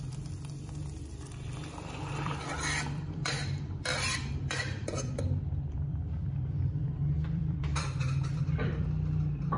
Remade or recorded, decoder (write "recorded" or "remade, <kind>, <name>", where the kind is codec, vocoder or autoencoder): remade, vocoder, BigVGAN v2